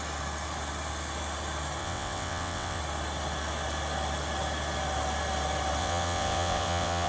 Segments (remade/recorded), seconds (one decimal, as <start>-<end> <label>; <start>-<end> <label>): 0.0-1.8 recorded; 1.8-2.8 remade; 2.8-5.8 recorded; 5.8-7.1 remade